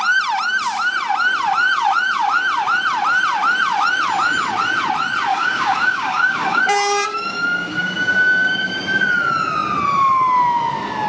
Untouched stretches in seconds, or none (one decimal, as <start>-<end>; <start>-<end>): 0.0-5.3; 6.6-7.1; 9.0-11.1